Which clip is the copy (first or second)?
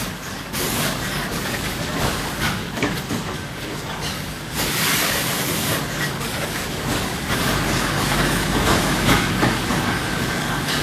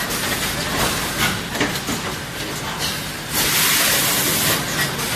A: first